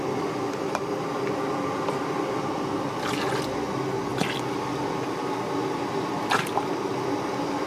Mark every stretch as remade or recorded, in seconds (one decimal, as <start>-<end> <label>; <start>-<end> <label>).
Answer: 0.0-7.7 recorded